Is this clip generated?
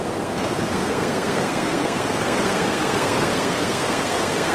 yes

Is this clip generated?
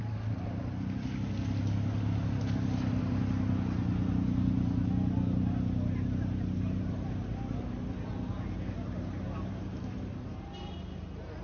no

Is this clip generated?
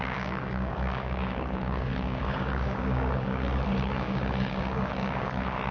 yes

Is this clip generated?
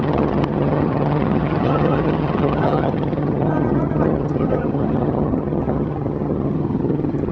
yes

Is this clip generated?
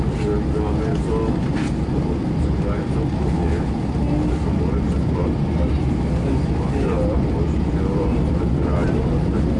no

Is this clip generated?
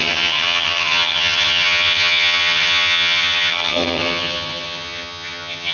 yes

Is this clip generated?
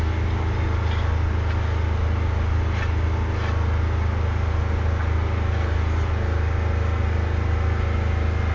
no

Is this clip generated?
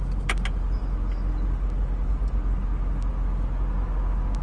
no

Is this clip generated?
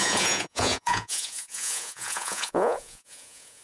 yes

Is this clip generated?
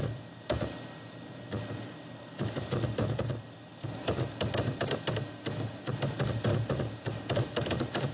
no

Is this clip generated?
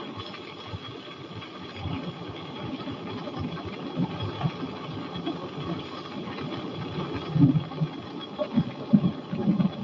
no